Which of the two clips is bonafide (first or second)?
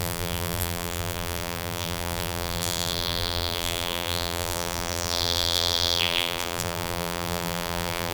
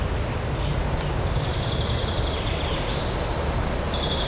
second